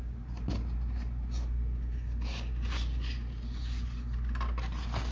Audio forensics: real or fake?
real